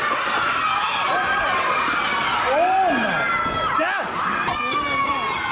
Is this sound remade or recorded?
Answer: recorded